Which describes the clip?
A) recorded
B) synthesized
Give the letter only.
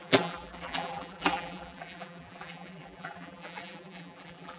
B